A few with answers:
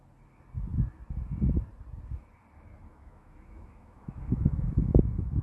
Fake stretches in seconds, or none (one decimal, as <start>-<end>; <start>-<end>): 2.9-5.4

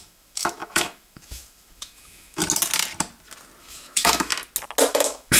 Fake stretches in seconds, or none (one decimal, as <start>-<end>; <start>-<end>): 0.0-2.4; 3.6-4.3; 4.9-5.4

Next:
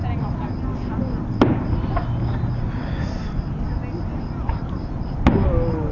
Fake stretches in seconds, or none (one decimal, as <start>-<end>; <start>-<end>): none

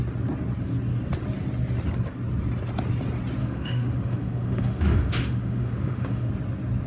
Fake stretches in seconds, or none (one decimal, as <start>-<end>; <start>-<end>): 3.4-6.3

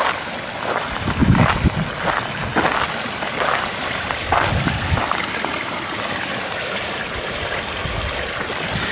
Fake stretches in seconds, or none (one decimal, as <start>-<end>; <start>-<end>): none